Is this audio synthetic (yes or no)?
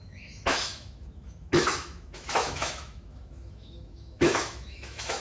yes